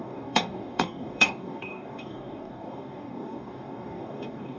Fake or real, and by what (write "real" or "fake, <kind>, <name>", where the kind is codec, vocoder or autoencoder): fake, codec, DAC